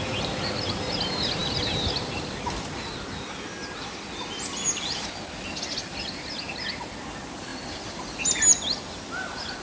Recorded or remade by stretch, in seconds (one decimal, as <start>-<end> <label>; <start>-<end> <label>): 0.0-9.6 recorded